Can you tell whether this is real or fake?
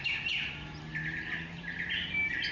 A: real